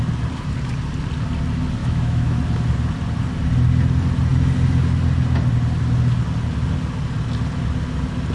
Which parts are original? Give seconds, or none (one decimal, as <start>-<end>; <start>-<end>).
0.0-1.8; 2.4-8.3